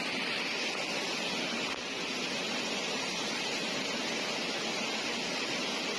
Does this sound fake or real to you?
real